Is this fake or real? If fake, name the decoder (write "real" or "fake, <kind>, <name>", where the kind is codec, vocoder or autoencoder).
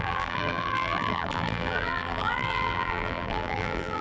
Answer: fake, vocoder, BigVGAN v2